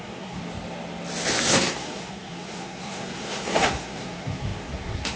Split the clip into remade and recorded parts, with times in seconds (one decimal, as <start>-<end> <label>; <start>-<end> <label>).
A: 0.0-0.4 remade; 0.4-1.4 recorded; 1.4-5.2 remade